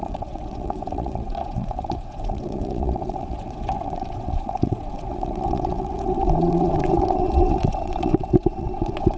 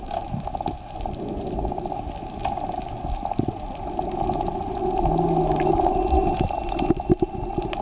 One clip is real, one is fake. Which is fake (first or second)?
first